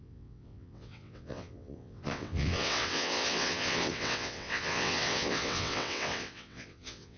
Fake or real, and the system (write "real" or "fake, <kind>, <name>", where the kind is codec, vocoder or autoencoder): fake, vocoder, WaveNeXt